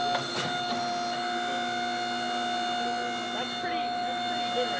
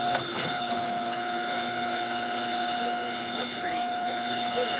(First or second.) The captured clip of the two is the first